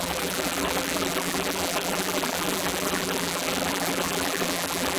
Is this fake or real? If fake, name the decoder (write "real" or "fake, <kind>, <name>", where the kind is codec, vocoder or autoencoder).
fake, vocoder, BigVGAN v2